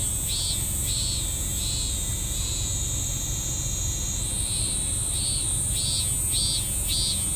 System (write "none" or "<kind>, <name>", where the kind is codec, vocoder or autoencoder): none